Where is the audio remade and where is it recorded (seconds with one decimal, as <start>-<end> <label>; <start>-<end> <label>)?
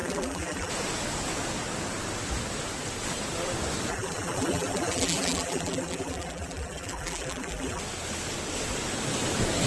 0.0-0.7 remade; 0.7-3.9 recorded; 3.9-7.8 remade; 7.8-9.7 recorded